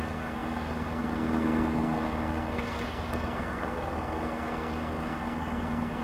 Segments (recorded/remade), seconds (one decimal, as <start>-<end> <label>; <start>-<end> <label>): 0.0-6.0 remade